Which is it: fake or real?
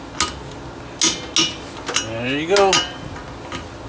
real